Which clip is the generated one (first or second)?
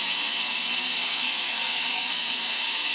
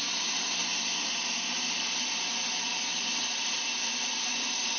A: first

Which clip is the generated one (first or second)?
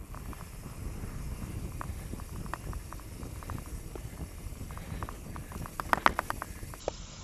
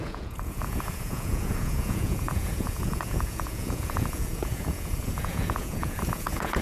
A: second